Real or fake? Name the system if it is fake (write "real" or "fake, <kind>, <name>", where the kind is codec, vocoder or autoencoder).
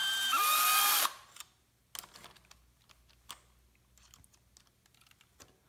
real